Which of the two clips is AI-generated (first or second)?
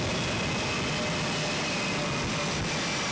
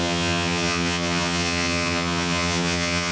second